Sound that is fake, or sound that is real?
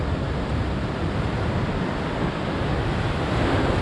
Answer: real